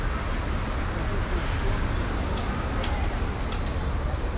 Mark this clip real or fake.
real